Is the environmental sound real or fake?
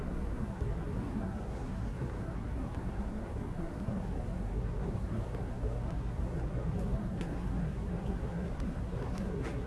fake